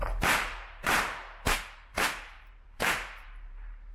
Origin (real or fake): fake